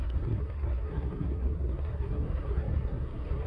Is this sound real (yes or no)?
no